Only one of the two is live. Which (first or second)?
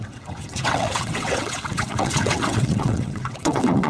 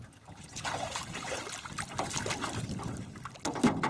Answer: second